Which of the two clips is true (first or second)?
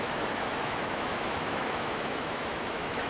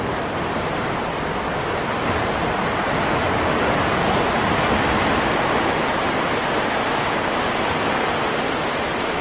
second